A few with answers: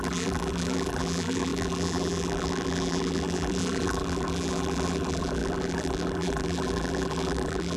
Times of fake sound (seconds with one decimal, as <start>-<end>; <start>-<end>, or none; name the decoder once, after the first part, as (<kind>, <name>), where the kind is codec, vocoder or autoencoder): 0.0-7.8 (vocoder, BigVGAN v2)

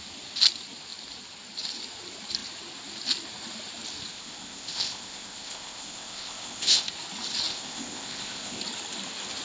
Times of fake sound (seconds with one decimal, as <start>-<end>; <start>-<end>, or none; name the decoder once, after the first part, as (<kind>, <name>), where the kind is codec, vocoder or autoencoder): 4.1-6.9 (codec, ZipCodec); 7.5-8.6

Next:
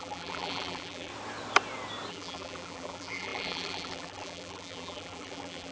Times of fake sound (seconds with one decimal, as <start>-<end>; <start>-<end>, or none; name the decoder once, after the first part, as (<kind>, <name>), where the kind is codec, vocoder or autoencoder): 0.0-1.1 (vocoder, BigVGAN v2); 2.1-5.7

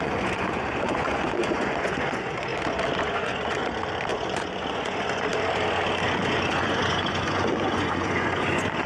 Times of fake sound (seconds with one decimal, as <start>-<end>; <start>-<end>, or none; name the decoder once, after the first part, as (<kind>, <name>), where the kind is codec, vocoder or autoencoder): 0.0-2.5 (vocoder, Vocos); 3.0-3.6; 4.1-5.3; 6.2-8.9

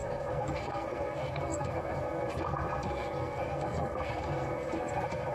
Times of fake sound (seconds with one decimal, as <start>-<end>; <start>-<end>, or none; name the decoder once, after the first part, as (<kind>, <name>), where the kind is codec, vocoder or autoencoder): 0.0-5.3 (codec, SNAC)

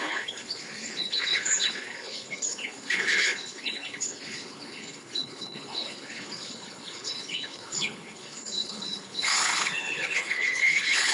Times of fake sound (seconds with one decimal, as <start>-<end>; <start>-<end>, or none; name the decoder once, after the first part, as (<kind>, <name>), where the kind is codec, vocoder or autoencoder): 0.0-11.1 (codec, HILCodec)